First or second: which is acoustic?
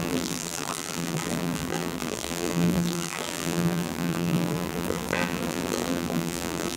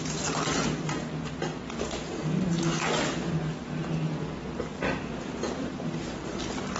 second